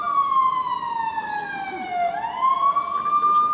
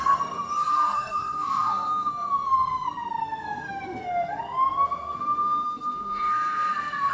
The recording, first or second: first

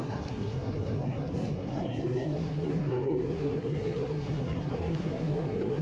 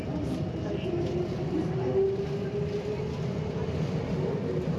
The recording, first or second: second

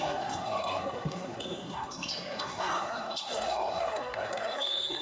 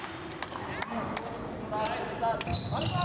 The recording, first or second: second